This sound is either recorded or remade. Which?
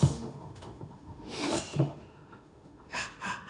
remade